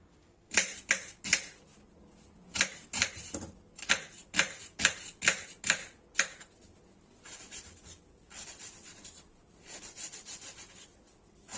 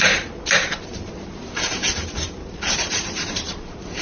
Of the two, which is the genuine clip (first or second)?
first